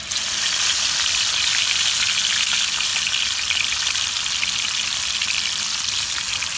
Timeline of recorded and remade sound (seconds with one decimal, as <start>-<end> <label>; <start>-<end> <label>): 0.0-6.6 recorded